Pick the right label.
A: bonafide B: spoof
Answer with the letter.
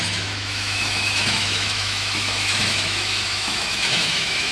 B